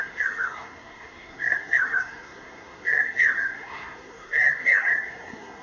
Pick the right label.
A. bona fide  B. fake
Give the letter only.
B